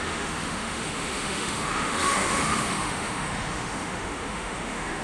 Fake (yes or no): yes